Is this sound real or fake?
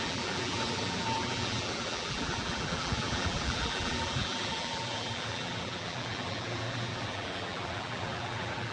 fake